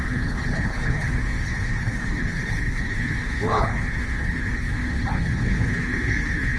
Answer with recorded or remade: remade